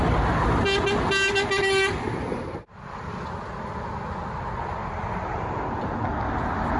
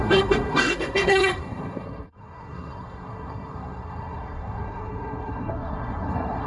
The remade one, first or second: second